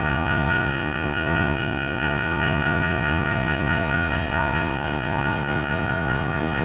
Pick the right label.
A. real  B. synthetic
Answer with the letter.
B